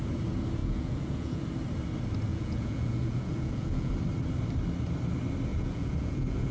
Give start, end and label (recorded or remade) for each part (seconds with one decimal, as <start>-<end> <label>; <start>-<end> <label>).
0.0-0.6 recorded; 0.6-1.4 remade; 1.4-2.3 recorded; 2.3-3.9 remade; 3.9-5.5 recorded; 5.5-6.5 remade